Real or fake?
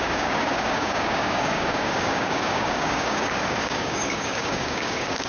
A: fake